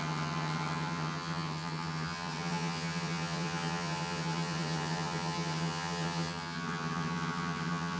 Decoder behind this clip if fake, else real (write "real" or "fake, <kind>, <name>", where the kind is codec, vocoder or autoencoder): fake, vocoder, HiFi-GAN